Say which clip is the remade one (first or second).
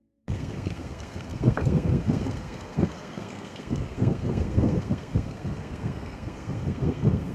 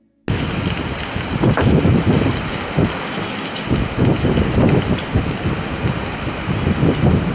first